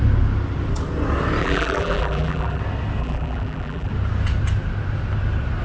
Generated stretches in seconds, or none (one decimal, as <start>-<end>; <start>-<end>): 1.4-2.6; 3.0-3.9